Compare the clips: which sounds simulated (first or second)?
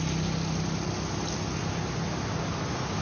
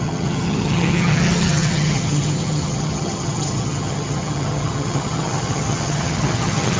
second